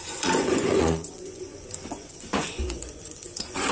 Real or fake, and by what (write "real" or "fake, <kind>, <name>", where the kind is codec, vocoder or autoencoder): fake, vocoder, Vocos